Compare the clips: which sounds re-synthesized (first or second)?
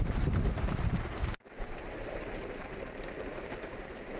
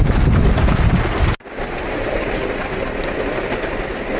first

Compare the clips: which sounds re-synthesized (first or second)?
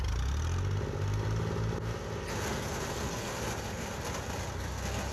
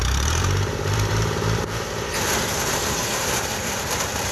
second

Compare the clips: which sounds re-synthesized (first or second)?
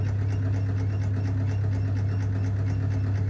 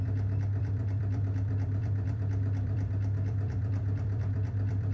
second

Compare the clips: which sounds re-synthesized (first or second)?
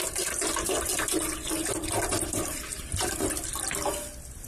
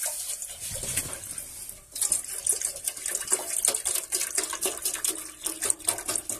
first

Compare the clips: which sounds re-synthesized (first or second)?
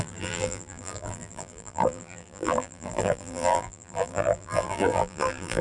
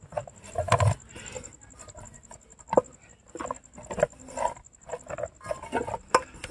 first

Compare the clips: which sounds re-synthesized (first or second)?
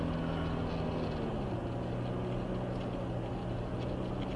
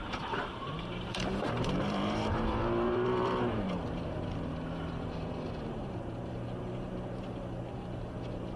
second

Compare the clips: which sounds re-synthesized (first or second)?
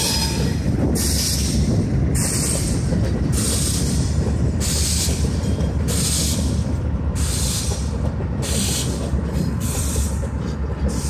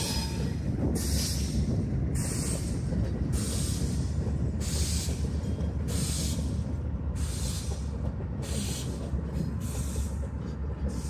first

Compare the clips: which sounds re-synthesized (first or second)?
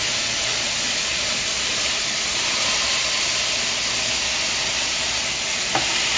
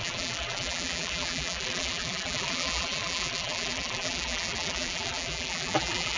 second